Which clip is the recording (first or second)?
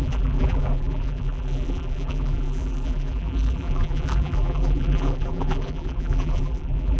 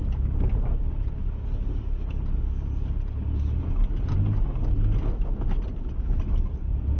second